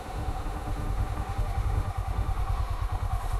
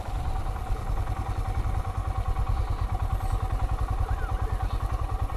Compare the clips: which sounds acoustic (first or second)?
second